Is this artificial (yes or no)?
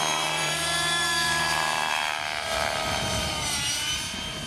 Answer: yes